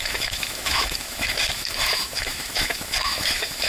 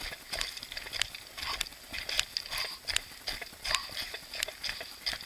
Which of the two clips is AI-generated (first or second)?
first